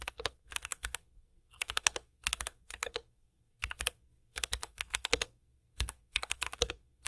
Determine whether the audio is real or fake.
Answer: fake